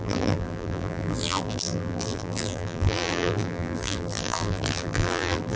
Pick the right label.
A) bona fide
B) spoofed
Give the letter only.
B